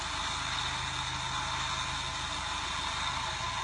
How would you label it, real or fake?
real